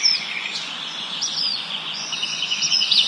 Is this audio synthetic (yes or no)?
yes